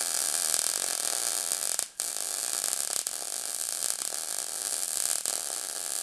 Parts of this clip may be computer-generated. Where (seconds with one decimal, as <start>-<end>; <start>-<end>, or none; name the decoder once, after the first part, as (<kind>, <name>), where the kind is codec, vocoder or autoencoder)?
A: none